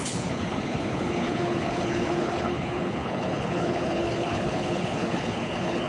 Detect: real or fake fake